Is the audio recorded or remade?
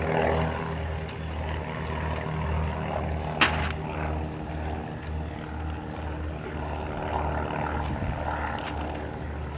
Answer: recorded